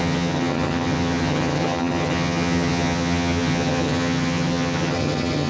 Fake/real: fake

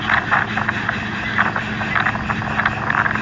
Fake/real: real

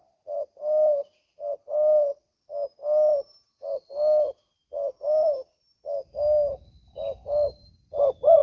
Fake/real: real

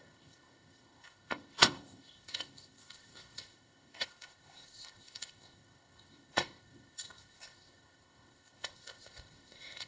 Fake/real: fake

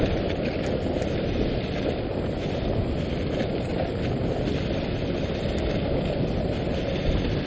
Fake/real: real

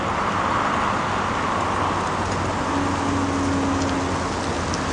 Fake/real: real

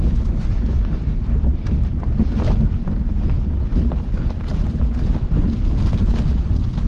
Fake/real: real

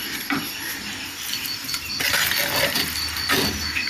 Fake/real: real